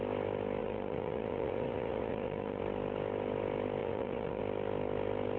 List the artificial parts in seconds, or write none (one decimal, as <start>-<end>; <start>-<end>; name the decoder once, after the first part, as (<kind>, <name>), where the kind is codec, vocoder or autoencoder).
0.6-2.6 (vocoder, Vocos); 3.8-4.4